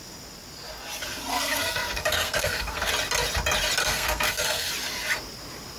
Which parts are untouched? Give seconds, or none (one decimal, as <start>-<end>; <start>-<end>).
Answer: 0.0-1.3; 2.9-3.8; 4.7-5.8